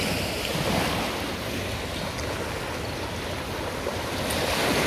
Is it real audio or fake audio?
real